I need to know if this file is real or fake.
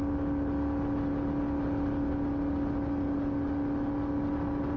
real